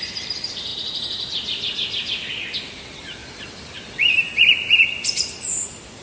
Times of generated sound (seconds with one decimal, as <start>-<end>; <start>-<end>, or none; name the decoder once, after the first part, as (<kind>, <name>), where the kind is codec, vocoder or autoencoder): 0.0-0.7 (vocoder, BigVGAN v2); 2.6-6.0